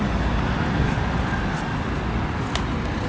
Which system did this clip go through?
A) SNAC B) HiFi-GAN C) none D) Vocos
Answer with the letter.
C